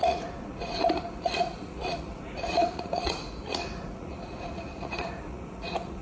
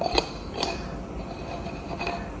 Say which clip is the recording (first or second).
second